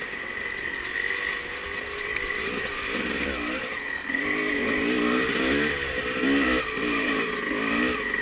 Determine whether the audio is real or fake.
real